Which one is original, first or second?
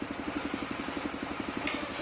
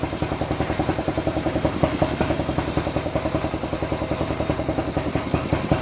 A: first